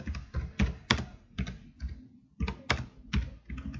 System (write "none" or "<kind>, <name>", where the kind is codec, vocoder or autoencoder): none